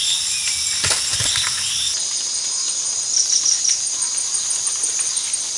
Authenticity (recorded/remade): recorded